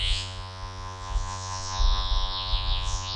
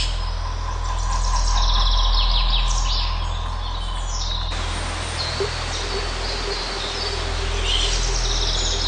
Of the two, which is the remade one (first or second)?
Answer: first